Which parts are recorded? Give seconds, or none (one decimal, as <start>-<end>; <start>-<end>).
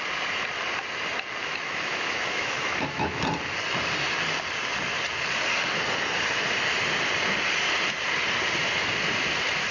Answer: 0.0-1.4; 3.2-9.7